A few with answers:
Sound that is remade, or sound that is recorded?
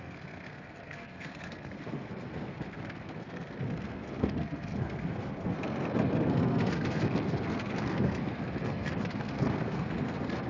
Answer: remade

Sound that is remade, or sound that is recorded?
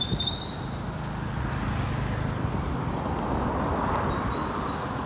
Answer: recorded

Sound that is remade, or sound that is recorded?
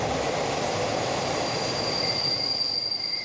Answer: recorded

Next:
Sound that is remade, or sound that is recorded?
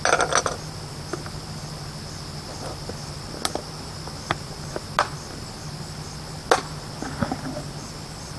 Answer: recorded